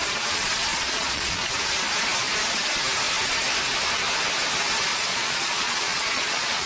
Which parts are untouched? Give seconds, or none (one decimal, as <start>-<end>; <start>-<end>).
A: 0.0-0.7; 1.5-4.9